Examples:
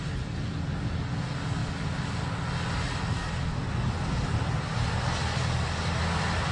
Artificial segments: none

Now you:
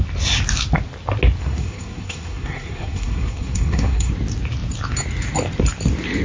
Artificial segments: 1.4-4.1 (codec, SNAC)

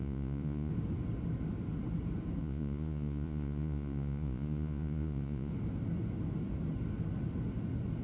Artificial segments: 0.0-0.7 (vocoder, Vocos); 2.4-5.5

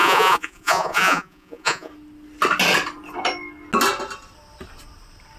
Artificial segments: 0.0-1.9 (vocoder, Vocos)